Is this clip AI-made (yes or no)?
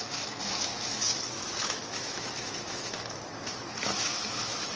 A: yes